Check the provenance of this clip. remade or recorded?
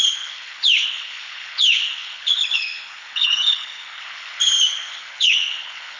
remade